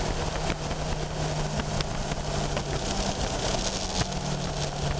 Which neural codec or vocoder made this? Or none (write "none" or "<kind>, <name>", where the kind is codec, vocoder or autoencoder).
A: none